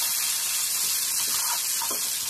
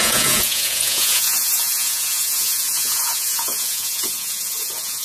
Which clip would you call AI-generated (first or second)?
second